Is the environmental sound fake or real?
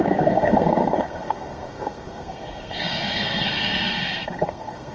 fake